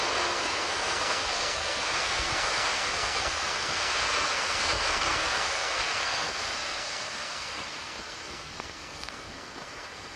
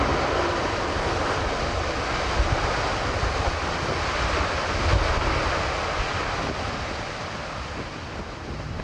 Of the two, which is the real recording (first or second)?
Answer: second